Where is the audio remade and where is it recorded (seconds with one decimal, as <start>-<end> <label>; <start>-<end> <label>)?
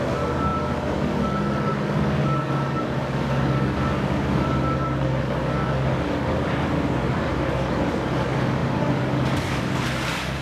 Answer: 0.0-10.4 remade